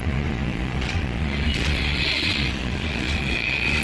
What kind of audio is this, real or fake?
fake